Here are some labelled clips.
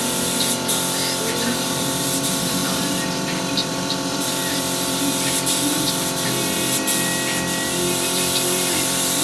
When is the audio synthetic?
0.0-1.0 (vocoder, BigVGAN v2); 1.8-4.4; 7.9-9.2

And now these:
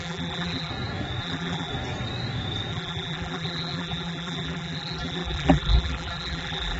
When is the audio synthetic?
0.0-0.7 (vocoder, BigVGAN v2); 1.2-1.7; 2.7-6.8